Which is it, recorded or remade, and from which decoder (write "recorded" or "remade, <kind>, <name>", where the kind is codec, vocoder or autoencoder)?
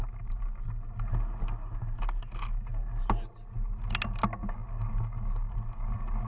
recorded